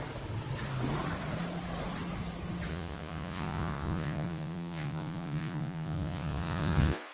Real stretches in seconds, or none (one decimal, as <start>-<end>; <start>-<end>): 0.0-2.7